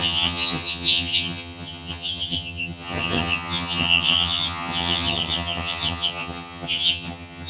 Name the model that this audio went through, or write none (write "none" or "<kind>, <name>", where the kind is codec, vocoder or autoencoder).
vocoder, HiFi-GAN